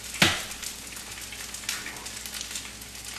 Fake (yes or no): no